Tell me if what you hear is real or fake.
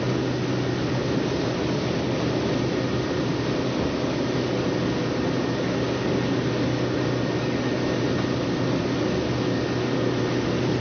real